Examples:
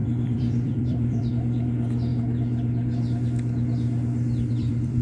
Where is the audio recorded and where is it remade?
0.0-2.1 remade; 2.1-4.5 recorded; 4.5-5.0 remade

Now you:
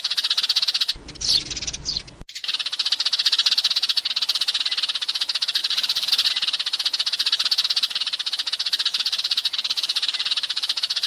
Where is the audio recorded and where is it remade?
0.0-5.6 recorded; 5.6-6.1 remade; 6.1-8.9 recorded; 8.9-11.1 remade

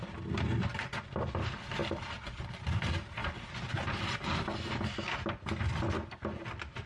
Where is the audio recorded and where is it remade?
0.0-6.9 recorded